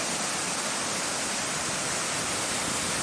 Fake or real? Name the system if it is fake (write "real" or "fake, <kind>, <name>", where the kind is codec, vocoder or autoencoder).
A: real